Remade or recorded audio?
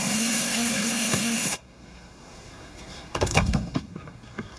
remade